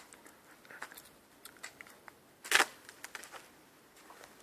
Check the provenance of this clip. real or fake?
real